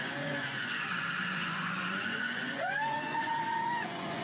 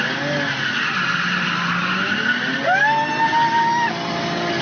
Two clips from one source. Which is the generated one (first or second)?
first